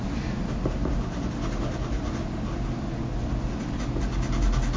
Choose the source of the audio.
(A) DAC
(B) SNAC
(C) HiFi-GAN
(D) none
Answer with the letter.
D